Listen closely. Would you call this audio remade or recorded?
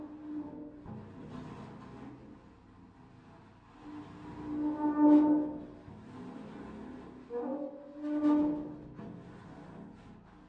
recorded